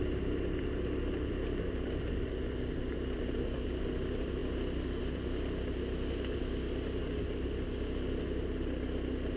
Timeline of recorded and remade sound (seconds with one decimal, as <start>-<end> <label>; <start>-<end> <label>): 0.0-9.4 recorded